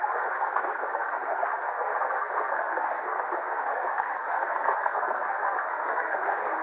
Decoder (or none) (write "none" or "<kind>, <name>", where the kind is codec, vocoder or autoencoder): codec, SNAC